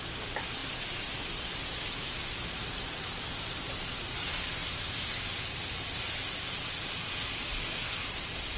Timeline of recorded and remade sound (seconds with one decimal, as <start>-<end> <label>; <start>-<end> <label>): 0.0-4.6 remade; 4.6-6.9 recorded; 6.9-7.4 remade; 7.4-8.0 recorded; 8.0-8.6 remade